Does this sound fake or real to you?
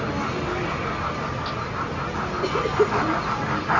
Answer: real